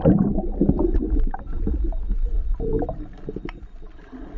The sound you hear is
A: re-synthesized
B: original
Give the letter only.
B